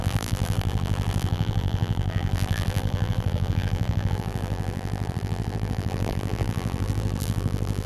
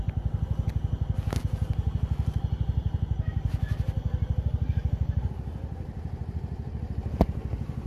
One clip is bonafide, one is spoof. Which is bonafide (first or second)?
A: second